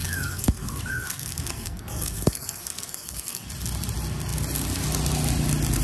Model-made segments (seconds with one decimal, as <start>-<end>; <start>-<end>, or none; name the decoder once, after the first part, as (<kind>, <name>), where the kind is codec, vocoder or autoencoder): 0.0-3.5 (codec, SNAC)